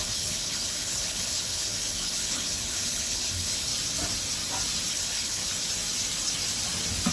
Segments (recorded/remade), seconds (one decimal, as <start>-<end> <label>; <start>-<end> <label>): 0.0-3.7 remade; 3.7-4.9 recorded; 4.9-5.4 remade; 5.4-7.1 recorded